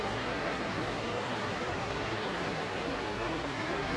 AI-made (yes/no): yes